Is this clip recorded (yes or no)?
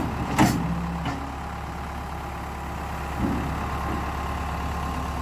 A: yes